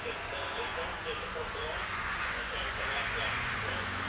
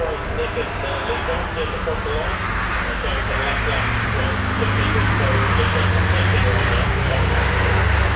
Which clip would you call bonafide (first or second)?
second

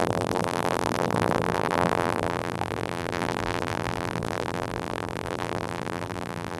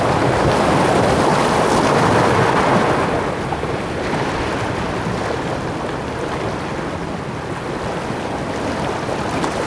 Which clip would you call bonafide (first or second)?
second